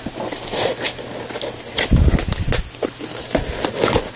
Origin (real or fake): real